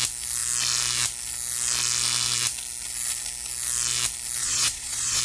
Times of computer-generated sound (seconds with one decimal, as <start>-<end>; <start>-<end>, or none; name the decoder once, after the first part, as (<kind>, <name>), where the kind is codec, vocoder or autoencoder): 4.4-5.2 (vocoder, Vocos)